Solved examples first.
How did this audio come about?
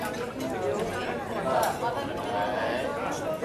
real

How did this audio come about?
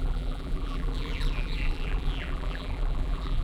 fake